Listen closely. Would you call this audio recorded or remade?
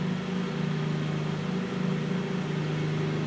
recorded